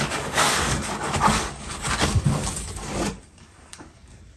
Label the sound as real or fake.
fake